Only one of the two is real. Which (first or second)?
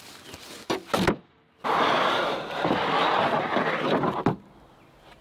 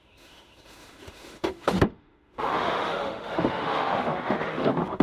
first